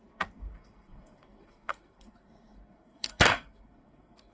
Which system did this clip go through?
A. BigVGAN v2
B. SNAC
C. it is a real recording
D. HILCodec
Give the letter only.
B